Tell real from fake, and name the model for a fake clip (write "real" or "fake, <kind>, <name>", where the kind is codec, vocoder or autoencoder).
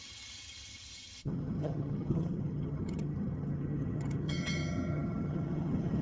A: fake, vocoder, HiFi-GAN